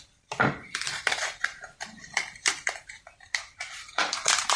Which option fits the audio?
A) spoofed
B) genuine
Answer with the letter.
A